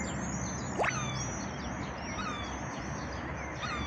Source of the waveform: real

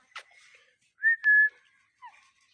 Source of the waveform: real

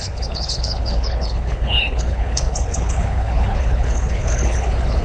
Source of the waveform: fake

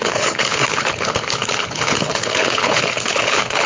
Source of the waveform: fake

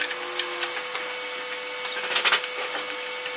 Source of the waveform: real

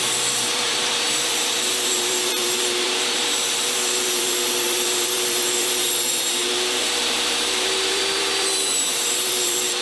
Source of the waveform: fake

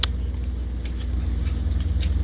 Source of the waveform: real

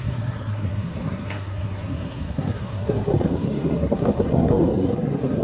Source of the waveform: fake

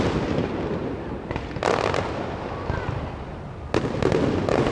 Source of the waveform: real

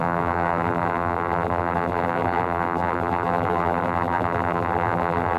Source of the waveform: fake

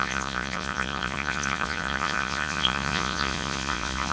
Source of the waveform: fake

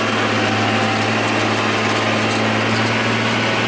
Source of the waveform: real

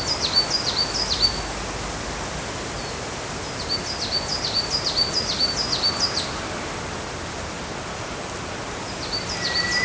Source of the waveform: real